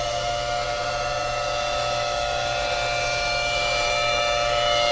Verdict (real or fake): fake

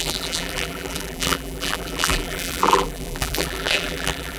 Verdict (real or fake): fake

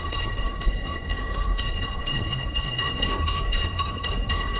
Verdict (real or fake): fake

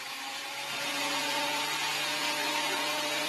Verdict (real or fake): fake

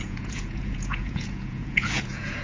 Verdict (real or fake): fake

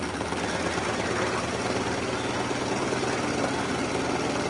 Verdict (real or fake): real